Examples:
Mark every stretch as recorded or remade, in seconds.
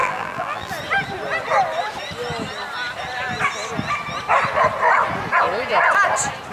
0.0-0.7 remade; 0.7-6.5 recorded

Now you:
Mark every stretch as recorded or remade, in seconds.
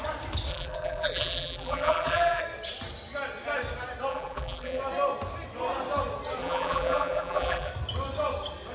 0.0-0.5 recorded; 0.5-2.4 remade; 2.4-4.1 recorded; 4.1-4.8 remade; 4.8-6.4 recorded; 6.4-7.7 remade; 7.7-8.7 recorded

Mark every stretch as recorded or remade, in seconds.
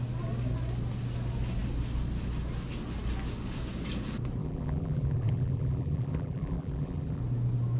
0.0-4.4 recorded; 4.4-7.2 remade; 7.2-7.8 recorded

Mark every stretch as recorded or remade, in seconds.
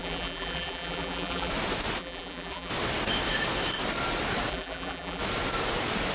0.0-1.5 remade; 1.5-2.0 recorded; 2.0-2.7 remade; 2.7-4.5 recorded; 4.5-5.2 remade; 5.2-6.1 recorded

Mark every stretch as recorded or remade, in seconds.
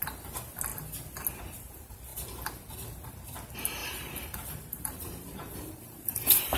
0.0-3.8 recorded; 3.8-6.6 remade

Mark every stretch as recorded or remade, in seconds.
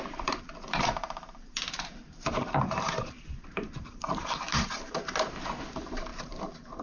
0.0-6.8 remade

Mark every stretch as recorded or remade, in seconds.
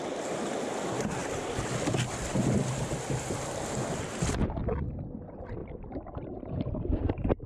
0.0-5.6 recorded; 5.6-6.7 remade; 6.7-7.5 recorded